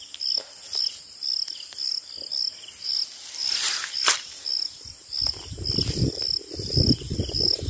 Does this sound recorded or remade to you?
recorded